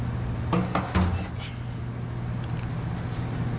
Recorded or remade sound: recorded